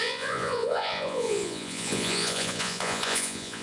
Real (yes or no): no